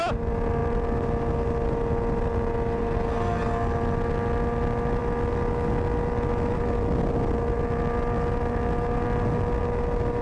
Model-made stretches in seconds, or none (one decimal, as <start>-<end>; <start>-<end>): none